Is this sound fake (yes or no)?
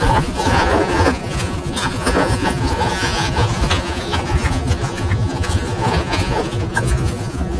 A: yes